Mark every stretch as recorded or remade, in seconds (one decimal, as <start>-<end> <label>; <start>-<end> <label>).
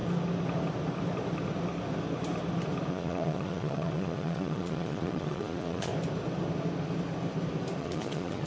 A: 0.0-2.9 recorded; 2.9-5.9 remade; 5.9-7.8 recorded; 7.8-8.5 remade